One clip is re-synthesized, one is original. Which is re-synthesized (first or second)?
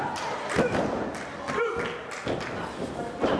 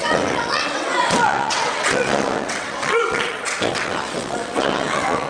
second